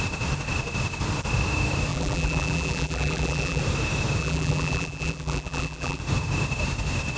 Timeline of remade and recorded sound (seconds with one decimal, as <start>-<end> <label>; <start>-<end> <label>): 0.0-1.9 recorded; 1.9-3.6 remade; 3.6-4.2 recorded; 4.2-6.0 remade; 6.0-7.2 recorded